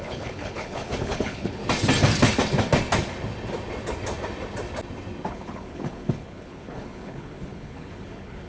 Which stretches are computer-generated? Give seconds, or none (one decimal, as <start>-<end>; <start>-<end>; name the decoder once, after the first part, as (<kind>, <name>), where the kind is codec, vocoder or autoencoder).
0.0-1.6 (codec, HILCodec); 5.3-8.5